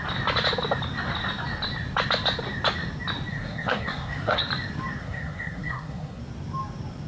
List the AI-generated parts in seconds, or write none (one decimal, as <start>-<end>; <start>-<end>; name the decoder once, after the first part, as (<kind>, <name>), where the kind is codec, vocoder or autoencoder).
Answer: 3.3-4.5 (codec, SNAC); 5.0-6.2